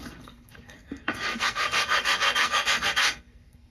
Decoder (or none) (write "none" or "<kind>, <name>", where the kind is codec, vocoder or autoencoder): codec, SNAC